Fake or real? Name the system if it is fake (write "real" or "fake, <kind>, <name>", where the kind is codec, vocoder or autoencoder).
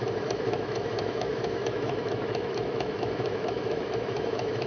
fake, autoencoder, DAC-VAE